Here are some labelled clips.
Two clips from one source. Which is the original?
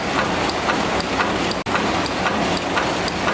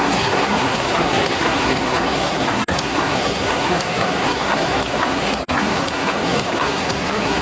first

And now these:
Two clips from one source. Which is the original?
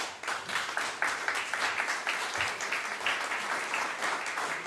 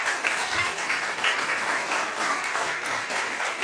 first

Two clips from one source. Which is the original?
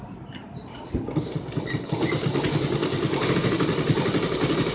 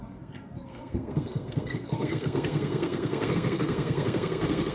first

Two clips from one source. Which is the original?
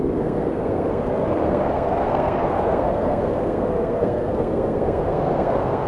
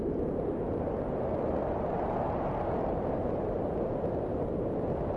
second